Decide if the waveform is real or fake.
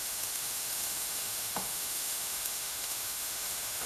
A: fake